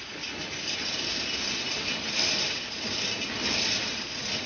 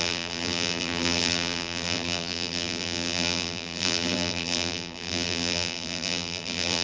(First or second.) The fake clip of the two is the second